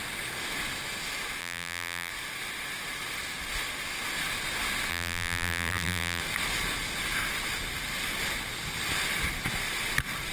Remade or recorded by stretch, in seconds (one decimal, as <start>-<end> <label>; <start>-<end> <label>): 0.0-1.4 recorded; 1.4-2.1 remade; 2.1-4.9 recorded; 4.9-6.2 remade; 6.2-10.3 recorded